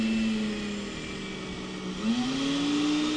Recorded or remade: recorded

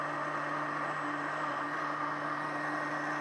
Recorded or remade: recorded